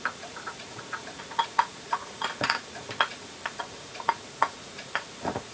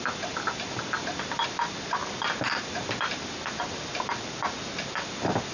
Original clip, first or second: second